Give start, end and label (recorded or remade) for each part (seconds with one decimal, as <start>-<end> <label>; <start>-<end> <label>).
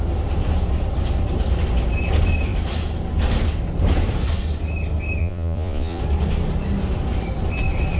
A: 0.0-5.2 recorded; 5.2-6.0 remade; 6.0-8.0 recorded